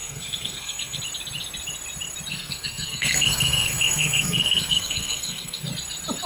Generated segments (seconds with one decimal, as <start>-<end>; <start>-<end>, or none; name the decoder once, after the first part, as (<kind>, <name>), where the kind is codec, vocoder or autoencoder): 0.0-1.0 (codec, SNAC); 2.3-5.7